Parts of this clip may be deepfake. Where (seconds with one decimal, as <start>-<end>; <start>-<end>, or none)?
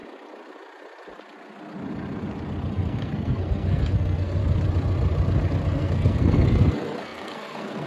2.7-4.4; 5.6-7.9